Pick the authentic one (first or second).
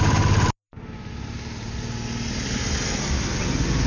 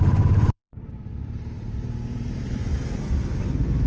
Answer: first